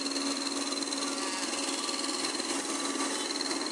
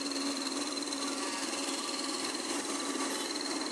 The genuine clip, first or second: first